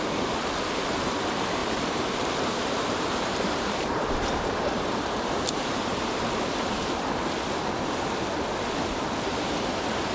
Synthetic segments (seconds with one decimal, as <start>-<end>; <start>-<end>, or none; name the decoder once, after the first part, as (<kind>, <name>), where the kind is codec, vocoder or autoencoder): 1.6-6.2 (vocoder, BigVGAN v2)